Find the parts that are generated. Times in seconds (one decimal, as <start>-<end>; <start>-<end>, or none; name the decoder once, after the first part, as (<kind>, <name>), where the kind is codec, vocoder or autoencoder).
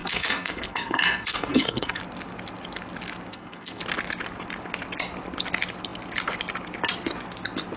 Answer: 0.0-2.0 (codec, SNAC); 3.3-3.8